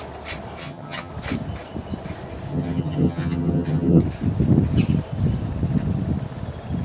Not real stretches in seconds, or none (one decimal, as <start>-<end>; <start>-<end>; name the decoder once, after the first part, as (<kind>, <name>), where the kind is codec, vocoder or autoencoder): 0.6-1.1 (vocoder, HiFi-GAN); 2.5-4.0